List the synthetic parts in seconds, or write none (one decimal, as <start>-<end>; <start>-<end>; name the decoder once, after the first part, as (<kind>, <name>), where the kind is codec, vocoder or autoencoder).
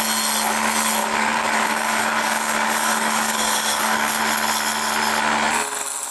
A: 1.0-4.2 (codec, DAC)